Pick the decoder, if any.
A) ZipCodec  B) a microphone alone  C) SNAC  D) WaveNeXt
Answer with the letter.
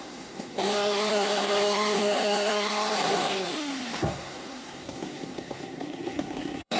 C